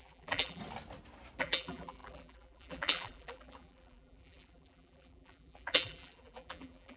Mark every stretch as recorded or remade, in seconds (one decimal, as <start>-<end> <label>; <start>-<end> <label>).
0.0-0.6 remade; 0.6-1.4 recorded; 1.4-7.0 remade